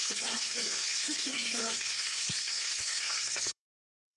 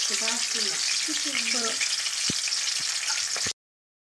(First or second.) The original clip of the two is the second